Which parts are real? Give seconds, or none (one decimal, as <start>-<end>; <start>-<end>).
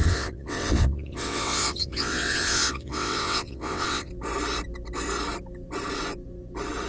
4.1-6.9